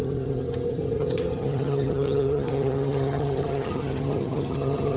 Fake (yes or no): yes